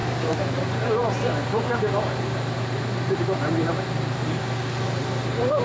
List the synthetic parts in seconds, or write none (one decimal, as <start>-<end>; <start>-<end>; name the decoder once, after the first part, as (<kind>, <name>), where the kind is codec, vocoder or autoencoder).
0.0-0.6 (vocoder, BigVGAN v2); 1.0-4.4